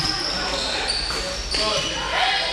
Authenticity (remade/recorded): recorded